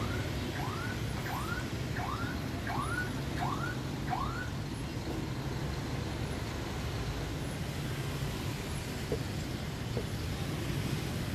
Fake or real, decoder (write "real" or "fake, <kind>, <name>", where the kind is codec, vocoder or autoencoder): real